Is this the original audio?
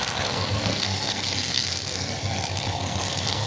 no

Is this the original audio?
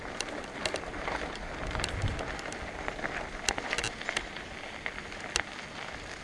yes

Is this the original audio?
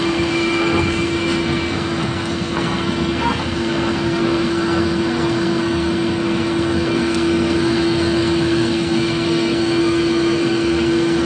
no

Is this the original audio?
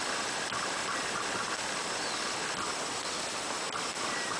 yes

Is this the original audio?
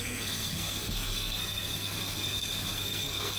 no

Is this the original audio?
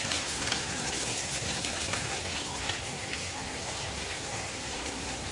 no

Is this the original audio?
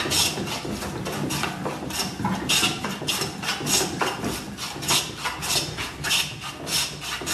yes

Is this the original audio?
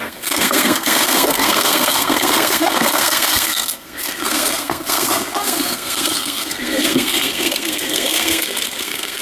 no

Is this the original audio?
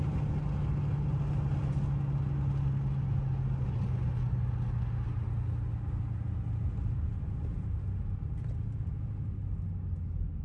yes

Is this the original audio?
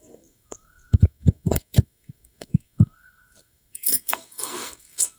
no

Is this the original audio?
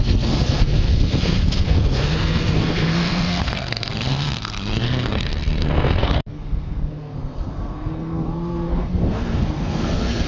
no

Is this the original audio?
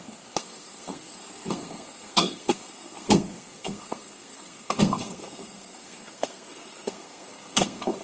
no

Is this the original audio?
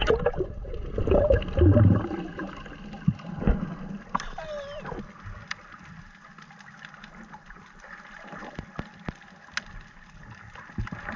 yes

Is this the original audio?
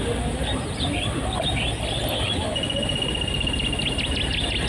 yes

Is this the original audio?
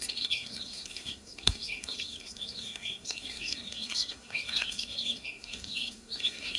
no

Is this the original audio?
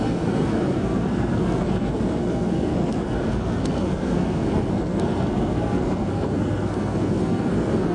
no